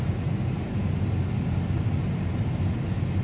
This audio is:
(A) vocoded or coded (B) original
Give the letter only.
B